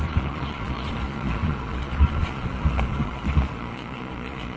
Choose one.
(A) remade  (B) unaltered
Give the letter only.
A